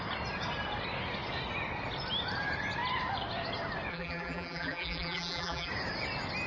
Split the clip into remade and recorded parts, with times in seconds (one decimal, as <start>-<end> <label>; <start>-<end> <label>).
0.0-3.9 recorded; 3.9-5.7 remade; 5.7-6.5 recorded

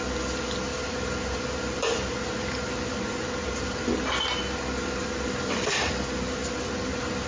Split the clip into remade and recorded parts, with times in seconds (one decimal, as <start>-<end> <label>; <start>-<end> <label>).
0.0-7.3 recorded

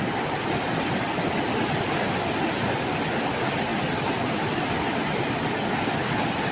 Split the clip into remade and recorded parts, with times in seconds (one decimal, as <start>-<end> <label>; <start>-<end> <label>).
0.0-6.5 recorded